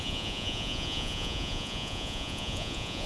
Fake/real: fake